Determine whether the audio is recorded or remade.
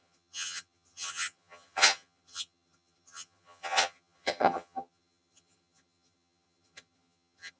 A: remade